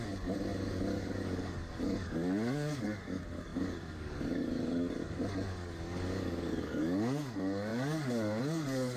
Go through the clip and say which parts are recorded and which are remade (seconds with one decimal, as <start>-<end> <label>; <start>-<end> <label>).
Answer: 0.0-9.0 remade